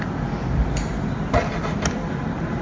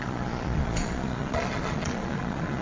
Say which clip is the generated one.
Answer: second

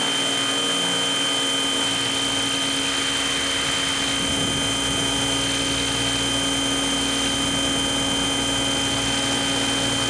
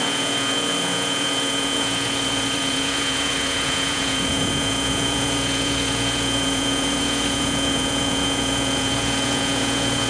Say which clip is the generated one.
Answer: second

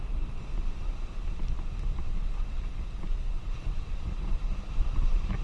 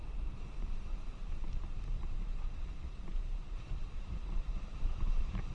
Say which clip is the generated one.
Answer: second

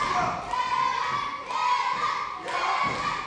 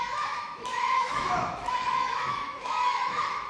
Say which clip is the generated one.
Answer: second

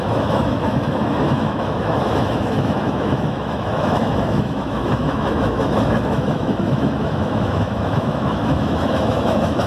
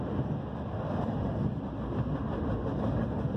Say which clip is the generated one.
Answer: first